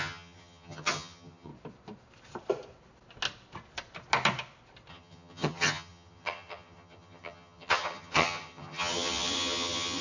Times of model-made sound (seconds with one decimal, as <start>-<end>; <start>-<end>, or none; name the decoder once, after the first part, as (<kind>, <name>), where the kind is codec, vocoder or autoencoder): 0.0-1.5 (vocoder, HiFi-GAN); 4.9-10.0